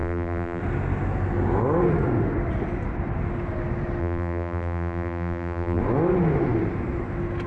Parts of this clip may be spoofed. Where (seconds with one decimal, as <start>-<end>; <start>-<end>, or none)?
0.0-0.6; 4.0-5.8